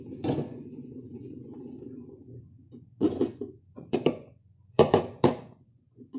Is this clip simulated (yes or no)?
yes